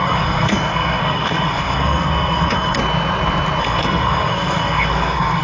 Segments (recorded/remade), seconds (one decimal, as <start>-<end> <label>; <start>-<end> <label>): 0.0-2.8 remade; 2.8-3.6 recorded; 3.6-5.4 remade